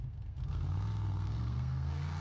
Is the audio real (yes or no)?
no